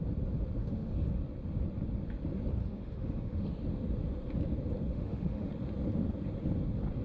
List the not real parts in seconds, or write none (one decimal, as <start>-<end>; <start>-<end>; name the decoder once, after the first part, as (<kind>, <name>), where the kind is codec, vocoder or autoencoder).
0.6-1.2 (autoencoder, DAC-VAE); 2.6-3.5; 4.9-5.5